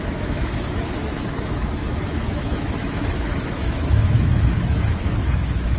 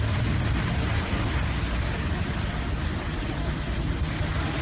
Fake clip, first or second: first